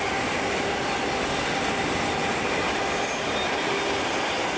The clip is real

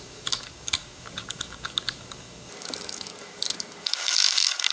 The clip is fake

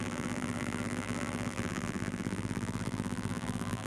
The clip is fake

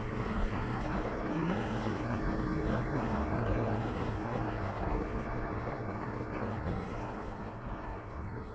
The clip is fake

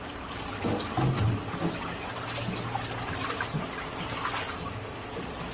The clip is real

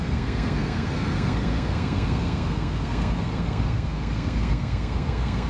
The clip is fake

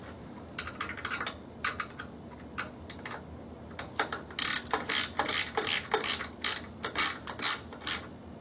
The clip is real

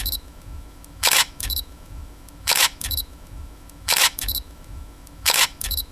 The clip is fake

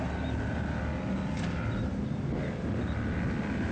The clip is real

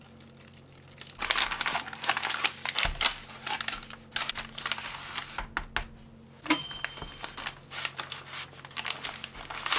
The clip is real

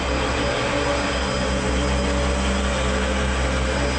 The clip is real